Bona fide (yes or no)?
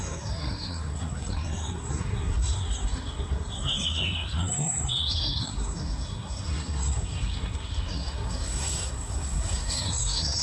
no